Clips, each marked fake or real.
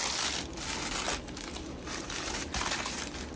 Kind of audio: real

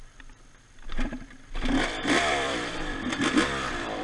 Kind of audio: fake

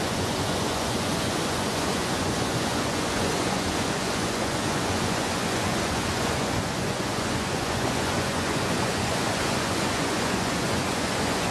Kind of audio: fake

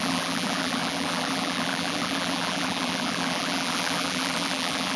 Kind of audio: fake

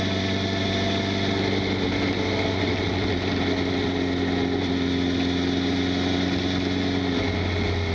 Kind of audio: real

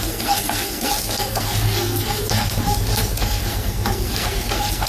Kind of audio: fake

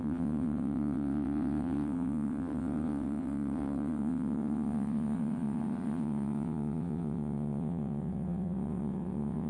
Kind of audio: fake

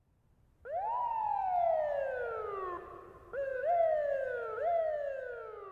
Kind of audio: real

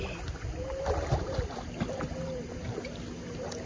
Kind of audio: real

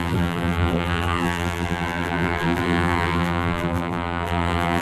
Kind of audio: fake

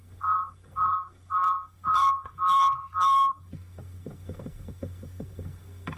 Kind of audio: fake